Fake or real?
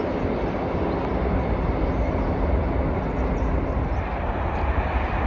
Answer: real